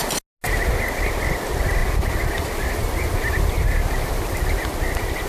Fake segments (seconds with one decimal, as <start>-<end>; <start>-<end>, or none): none